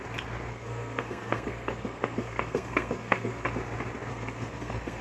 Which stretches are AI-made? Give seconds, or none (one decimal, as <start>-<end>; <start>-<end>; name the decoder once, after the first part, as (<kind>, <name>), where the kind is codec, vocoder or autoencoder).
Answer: 0.5-3.5 (codec, SNAC); 4.1-5.0